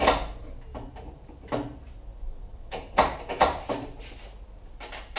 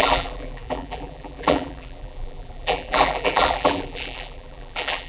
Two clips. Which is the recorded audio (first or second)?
first